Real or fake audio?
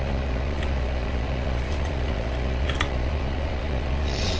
fake